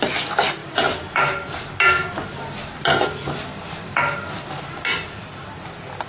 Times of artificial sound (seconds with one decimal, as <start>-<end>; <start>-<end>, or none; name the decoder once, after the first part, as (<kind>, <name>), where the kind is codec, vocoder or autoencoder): none